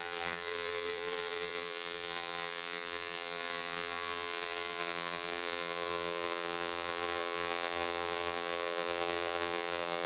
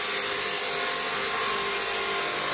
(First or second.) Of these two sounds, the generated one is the first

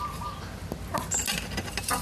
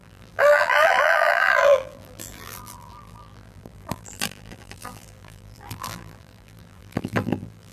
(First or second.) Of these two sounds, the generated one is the second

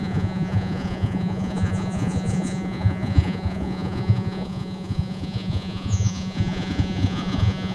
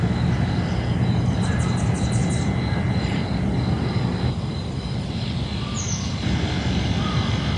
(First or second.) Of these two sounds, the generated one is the first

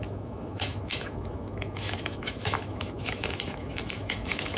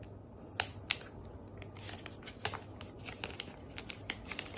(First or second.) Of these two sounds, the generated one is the first